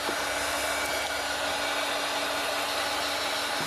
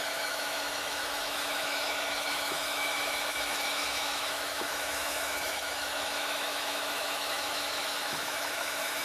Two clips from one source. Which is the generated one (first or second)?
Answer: second